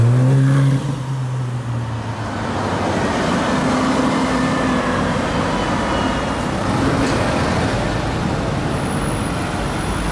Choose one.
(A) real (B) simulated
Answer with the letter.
A